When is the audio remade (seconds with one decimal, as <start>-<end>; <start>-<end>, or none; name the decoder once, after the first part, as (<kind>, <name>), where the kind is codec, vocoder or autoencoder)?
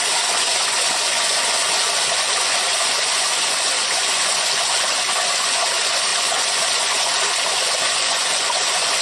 0.0-9.0 (vocoder, Vocos)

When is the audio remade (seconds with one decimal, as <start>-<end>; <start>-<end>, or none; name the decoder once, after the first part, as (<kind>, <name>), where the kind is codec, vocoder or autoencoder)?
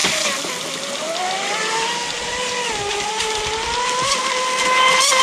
none